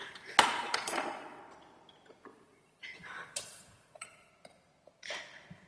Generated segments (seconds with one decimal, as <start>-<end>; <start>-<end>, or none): 0.0-1.4; 2.3-4.3